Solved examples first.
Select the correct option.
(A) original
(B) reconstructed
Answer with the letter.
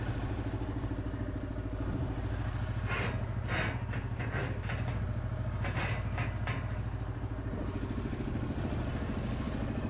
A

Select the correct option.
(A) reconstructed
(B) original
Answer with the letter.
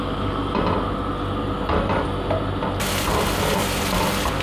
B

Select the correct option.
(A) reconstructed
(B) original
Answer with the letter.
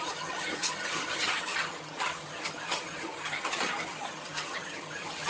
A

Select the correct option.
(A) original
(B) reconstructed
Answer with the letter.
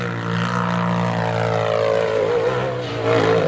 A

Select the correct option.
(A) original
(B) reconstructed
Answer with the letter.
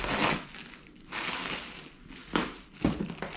A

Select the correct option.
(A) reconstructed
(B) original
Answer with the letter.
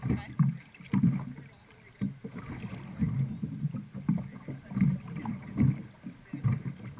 B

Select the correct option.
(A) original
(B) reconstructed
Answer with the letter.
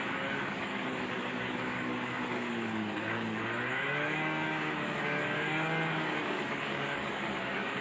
B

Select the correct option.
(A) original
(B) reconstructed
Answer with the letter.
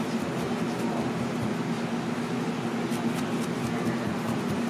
A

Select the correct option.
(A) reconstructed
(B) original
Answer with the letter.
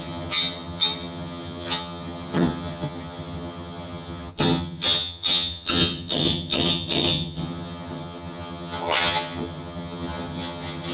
A